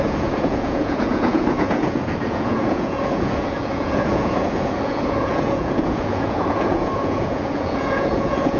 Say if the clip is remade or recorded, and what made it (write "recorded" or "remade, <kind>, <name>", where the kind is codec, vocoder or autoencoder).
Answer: remade, vocoder, Vocos